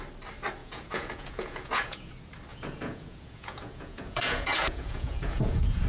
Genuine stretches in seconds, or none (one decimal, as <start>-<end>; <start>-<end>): 0.0-0.6; 2.1-2.5